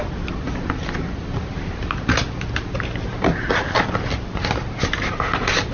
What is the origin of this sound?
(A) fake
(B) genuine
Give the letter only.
B